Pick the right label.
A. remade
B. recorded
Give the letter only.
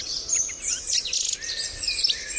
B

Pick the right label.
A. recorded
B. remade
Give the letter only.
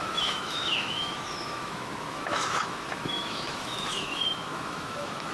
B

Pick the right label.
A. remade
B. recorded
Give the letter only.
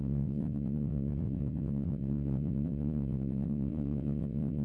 A